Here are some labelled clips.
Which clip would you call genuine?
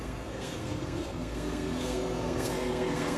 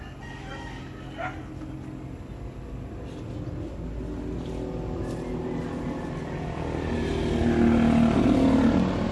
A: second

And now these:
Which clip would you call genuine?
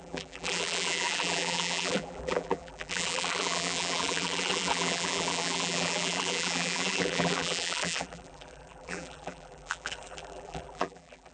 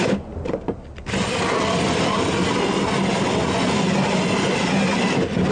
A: second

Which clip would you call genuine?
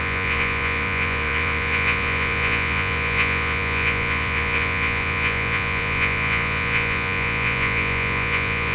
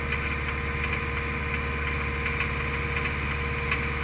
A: second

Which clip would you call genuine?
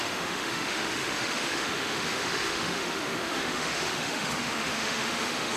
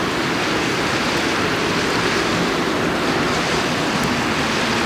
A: second